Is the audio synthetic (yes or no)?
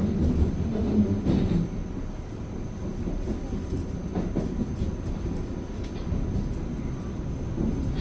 no